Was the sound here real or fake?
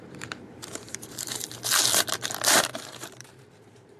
fake